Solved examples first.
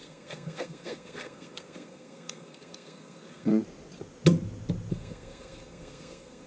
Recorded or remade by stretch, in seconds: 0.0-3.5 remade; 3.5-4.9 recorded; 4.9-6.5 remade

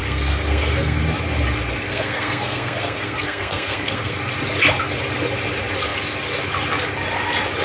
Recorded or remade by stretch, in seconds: 0.0-1.0 remade; 1.0-1.9 recorded; 1.9-4.2 remade; 4.2-7.6 recorded

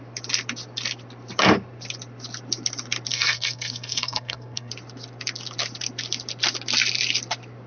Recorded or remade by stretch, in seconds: 0.0-3.1 recorded; 3.1-4.7 remade; 4.7-7.7 recorded